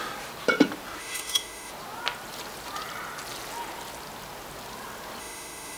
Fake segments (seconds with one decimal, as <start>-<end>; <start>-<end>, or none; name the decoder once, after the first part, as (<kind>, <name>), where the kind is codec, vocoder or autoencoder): 1.0-1.7 (autoencoder, DAC-VAE); 5.2-5.8

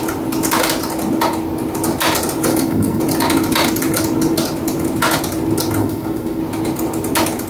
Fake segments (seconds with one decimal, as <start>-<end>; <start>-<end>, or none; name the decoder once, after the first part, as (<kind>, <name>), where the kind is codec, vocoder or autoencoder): 2.5-3.0 (codec, SNAC); 5.8-6.4